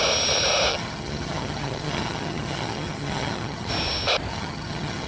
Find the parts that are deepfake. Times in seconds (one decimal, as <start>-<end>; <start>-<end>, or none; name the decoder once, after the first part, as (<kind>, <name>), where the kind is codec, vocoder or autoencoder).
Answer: 0.7-3.7 (vocoder, HiFi-GAN); 4.3-5.1